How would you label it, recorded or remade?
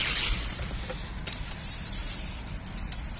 remade